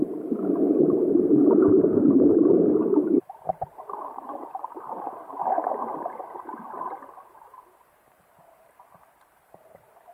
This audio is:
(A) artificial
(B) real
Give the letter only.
A